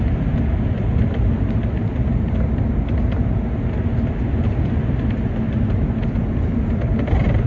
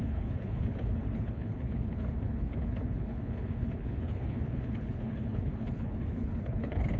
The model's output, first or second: second